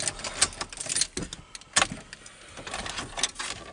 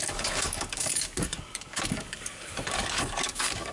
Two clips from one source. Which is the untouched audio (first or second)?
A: first